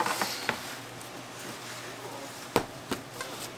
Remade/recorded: recorded